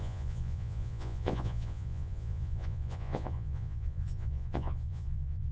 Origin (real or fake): fake